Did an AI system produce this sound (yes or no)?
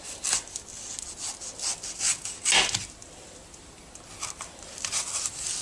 no